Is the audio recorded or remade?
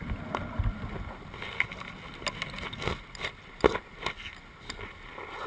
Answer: recorded